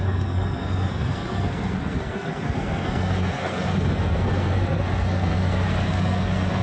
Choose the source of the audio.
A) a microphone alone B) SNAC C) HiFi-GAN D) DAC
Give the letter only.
B